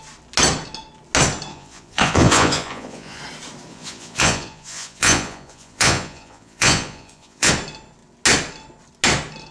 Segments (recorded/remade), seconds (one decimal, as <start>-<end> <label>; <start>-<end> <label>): 0.0-1.5 recorded; 1.5-3.2 remade; 3.2-3.7 recorded; 3.7-7.5 remade; 7.5-9.5 recorded